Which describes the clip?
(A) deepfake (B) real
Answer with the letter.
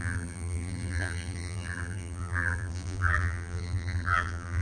A